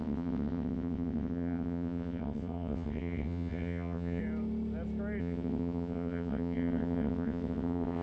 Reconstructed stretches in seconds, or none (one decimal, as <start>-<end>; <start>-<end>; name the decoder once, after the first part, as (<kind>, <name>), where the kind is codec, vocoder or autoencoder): 0.0-4.2 (vocoder, WaveNeXt); 5.2-8.0